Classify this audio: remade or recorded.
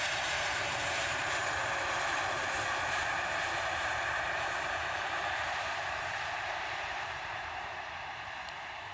remade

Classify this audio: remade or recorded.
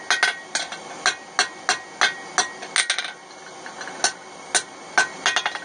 recorded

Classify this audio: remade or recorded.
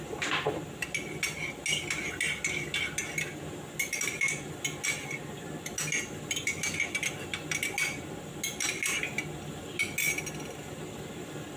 recorded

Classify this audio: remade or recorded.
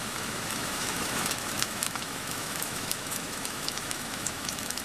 remade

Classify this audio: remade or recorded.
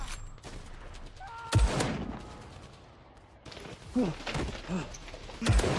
recorded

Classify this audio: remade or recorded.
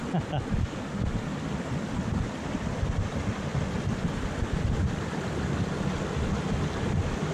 recorded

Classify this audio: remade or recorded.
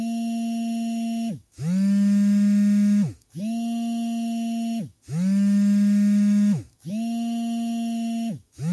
remade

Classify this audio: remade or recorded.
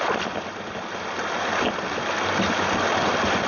recorded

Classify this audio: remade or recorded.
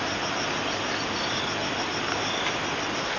recorded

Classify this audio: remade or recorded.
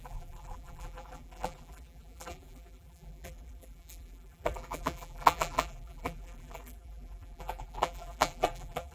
remade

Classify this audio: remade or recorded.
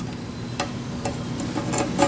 recorded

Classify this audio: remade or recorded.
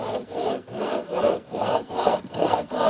remade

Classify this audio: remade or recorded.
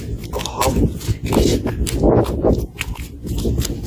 recorded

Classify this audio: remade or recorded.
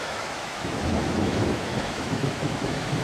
remade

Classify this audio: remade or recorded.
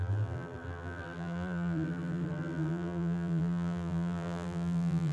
remade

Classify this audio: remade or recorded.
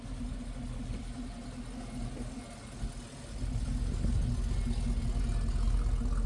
recorded